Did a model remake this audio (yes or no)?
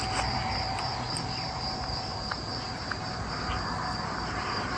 no